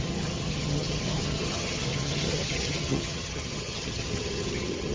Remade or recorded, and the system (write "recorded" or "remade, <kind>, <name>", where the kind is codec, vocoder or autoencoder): remade, vocoder, HiFi-GAN